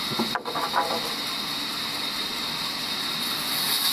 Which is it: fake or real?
real